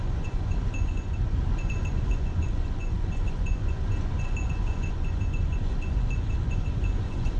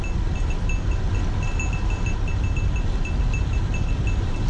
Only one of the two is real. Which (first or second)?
second